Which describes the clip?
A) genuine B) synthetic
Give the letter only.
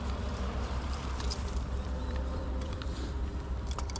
B